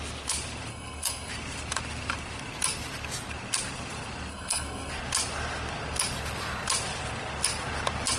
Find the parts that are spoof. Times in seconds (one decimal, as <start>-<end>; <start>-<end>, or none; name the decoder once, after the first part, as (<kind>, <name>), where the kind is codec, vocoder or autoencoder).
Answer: 0.7-1.3 (codec, SNAC); 4.3-4.9